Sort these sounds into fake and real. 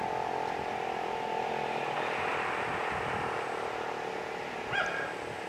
real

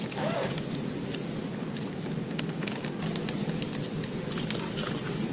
real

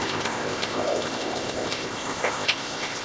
fake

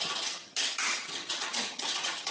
fake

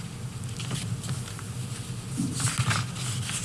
real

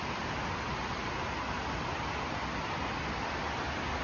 real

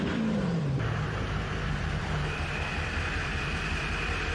fake